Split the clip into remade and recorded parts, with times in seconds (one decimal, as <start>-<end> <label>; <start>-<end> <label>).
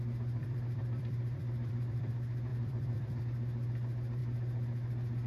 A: 0.0-0.4 recorded; 0.4-2.1 remade; 2.1-2.5 recorded; 2.5-3.2 remade; 3.2-5.3 recorded